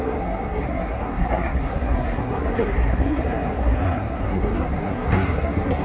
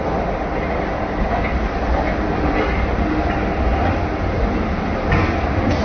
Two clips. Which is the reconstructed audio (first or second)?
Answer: first